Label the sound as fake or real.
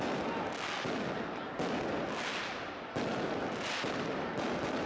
real